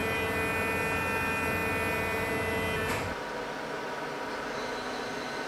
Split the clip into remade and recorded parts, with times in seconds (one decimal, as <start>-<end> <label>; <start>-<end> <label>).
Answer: 0.0-5.5 recorded